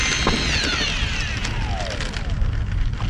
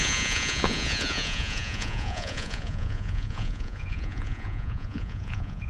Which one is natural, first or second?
first